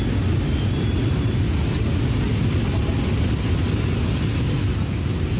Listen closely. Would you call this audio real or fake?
real